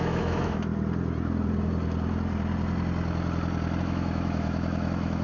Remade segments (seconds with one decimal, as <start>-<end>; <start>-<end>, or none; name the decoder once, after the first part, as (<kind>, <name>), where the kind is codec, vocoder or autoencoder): 0.0-0.7 (autoencoder, DAC-VAE); 3.8-5.2